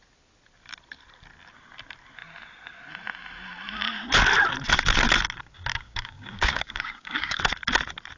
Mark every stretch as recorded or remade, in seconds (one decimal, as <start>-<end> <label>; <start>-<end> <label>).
0.0-5.7 recorded; 5.7-7.4 remade; 7.4-8.2 recorded